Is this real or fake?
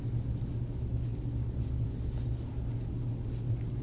real